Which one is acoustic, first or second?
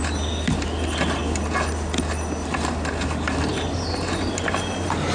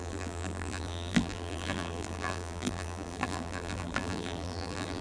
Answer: first